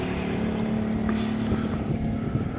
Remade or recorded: recorded